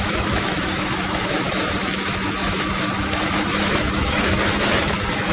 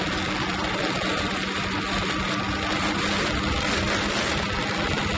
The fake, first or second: first